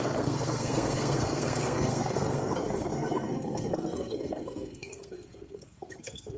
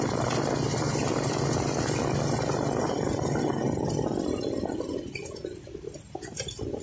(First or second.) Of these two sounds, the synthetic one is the first